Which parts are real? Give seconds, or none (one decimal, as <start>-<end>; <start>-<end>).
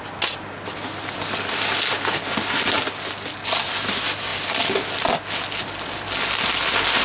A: 0.0-7.0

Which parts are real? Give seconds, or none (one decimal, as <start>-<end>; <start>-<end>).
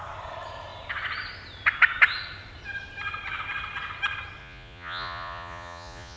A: 0.0-4.4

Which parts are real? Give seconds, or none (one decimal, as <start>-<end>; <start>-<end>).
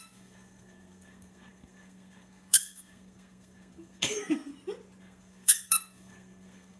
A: 4.5-5.0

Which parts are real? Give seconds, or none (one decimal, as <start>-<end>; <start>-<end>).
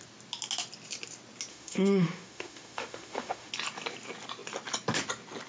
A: 0.0-1.5; 3.5-5.5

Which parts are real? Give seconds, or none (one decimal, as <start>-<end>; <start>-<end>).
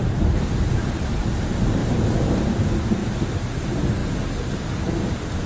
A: 1.2-1.8; 2.4-5.5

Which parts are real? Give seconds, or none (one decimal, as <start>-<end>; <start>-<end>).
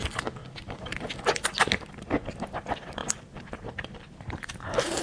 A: 0.0-5.0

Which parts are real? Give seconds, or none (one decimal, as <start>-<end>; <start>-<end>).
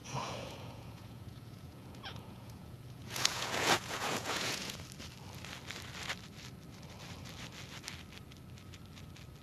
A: 4.8-9.4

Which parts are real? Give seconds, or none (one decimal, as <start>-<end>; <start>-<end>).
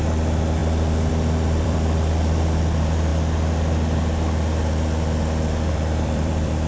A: 3.1-5.7